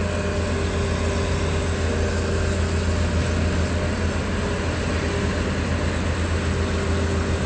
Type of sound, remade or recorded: recorded